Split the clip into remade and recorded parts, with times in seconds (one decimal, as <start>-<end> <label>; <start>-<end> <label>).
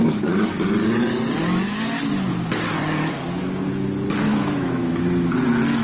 0.0-4.3 recorded; 4.3-5.0 remade; 5.0-5.8 recorded